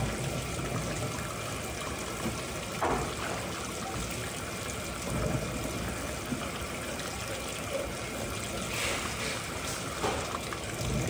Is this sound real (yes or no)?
yes